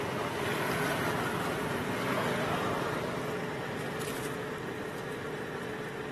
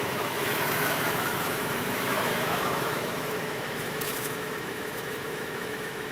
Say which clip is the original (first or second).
first